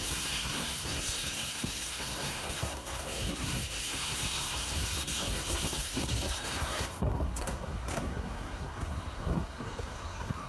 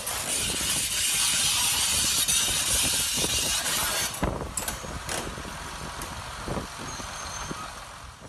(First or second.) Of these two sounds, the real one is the second